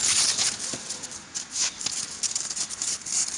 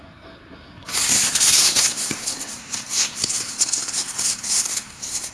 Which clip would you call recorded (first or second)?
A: first